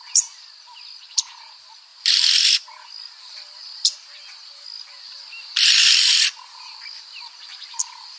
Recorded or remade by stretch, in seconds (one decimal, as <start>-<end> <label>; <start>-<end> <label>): 0.0-1.9 recorded; 1.9-6.8 remade; 6.8-7.5 recorded; 7.5-8.2 remade